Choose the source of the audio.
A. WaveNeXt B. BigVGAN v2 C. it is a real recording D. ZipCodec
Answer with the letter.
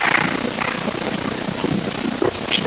C